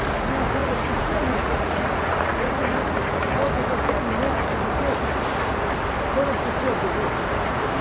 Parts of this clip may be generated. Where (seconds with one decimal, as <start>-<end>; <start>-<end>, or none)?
0.6-3.4